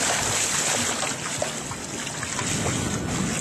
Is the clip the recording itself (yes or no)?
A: yes